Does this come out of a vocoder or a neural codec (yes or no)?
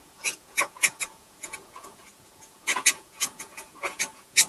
yes